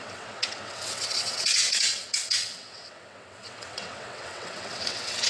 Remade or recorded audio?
remade